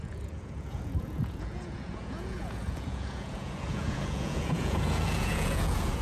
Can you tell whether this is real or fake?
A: fake